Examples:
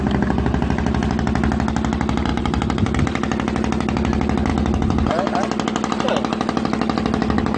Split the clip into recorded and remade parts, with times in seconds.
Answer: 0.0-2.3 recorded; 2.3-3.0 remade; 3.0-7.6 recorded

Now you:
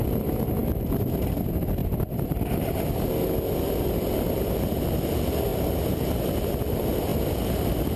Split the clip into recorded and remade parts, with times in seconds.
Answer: 0.0-1.8 recorded; 1.8-2.7 remade; 2.7-8.0 recorded

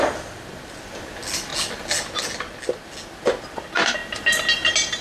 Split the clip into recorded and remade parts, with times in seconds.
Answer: 0.0-5.0 recorded

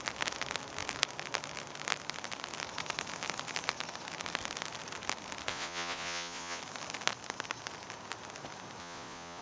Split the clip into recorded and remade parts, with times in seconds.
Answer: 0.0-5.5 recorded; 5.5-6.6 remade; 6.6-8.8 recorded; 8.8-9.4 remade

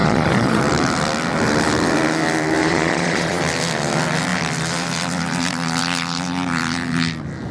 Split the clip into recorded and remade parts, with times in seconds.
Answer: 0.0-0.6 remade; 0.6-2.6 recorded; 2.6-3.4 remade; 3.4-7.5 recorded

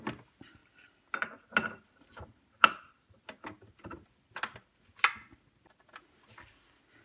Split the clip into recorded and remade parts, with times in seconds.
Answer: 0.0-7.0 recorded